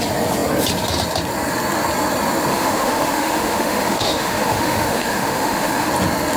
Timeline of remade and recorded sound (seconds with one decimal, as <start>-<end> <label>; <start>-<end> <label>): 0.0-2.5 recorded; 2.5-5.9 remade; 5.9-6.4 recorded